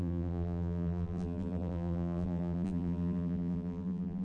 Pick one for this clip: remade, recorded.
remade